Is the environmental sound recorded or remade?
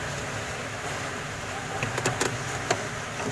recorded